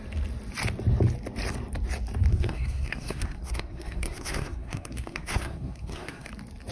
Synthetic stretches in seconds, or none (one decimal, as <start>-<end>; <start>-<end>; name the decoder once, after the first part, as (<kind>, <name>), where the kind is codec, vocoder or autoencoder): 2.3-6.3 (codec, SNAC)